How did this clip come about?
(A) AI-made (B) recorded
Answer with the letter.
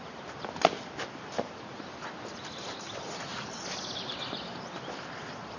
A